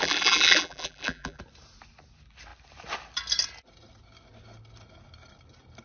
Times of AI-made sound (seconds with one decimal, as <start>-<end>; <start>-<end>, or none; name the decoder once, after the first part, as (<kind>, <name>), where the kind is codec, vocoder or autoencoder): 0.0-1.4 (vocoder, BigVGAN v2)

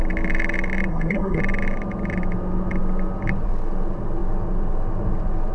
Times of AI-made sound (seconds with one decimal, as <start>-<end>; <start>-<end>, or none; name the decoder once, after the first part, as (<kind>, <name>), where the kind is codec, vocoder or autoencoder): 0.9-1.4 (codec, SNAC)

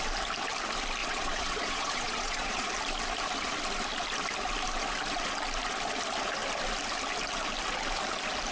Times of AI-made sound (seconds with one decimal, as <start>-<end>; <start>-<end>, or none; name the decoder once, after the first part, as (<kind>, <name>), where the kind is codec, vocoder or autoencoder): 1.0-2.7 (vocoder, Vocos)

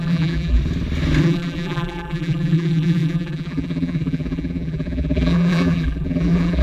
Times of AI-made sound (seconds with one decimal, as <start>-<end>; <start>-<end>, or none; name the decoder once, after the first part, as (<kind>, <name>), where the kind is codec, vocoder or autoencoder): 0.0-0.6 (vocoder, BigVGAN v2); 1.2-6.6

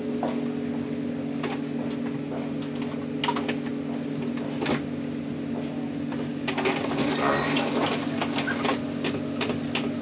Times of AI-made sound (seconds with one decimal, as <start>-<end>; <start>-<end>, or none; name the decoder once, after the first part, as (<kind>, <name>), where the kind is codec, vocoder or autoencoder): none

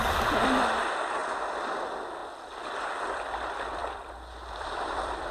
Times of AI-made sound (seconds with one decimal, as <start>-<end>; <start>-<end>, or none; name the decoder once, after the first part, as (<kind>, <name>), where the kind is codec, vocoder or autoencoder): 2.2-3.0 (vocoder, BigVGAN v2); 3.8-5.3